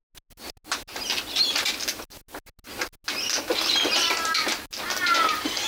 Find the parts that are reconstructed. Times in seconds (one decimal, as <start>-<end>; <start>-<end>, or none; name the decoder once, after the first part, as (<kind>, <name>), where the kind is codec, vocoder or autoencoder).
none